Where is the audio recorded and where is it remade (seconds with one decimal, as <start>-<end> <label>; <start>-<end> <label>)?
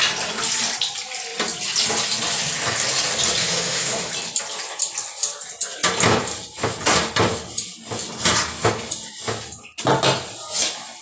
0.0-3.4 recorded; 3.4-4.1 remade; 4.1-11.0 recorded